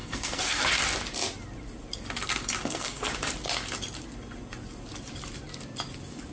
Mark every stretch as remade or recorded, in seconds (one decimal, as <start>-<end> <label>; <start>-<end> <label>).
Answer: 0.0-0.6 remade; 0.6-2.6 recorded; 2.6-3.1 remade; 3.1-6.3 recorded